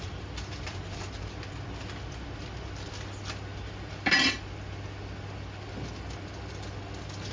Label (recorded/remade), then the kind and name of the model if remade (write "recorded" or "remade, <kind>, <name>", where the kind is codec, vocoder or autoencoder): recorded